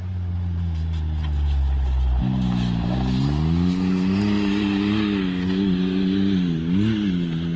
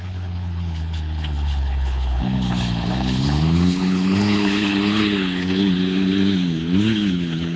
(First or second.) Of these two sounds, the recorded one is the first